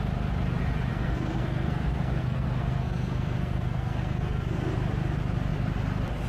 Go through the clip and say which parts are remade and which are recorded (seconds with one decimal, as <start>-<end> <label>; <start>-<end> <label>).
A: 0.0-0.9 recorded; 0.9-4.7 remade; 4.7-6.3 recorded